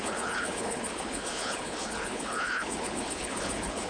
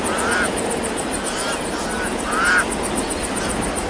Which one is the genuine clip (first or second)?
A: second